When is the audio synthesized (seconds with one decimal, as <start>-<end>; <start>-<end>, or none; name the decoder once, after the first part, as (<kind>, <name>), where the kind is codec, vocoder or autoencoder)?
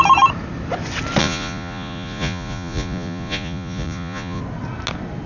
1.2-4.4 (vocoder, Vocos)